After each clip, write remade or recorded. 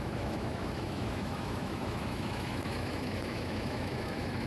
remade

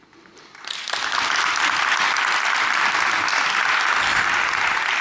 recorded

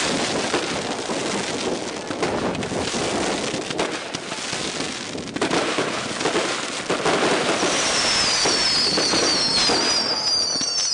recorded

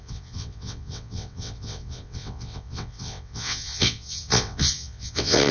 remade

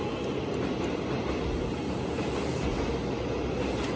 recorded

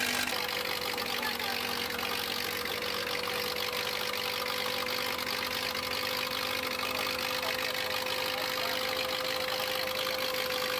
recorded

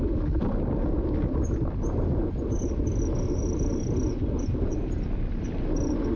recorded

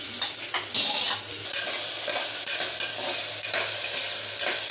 recorded